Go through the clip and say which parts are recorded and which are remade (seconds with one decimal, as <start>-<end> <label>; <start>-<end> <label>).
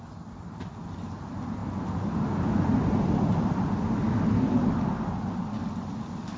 0.0-6.4 recorded